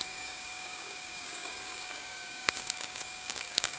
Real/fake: fake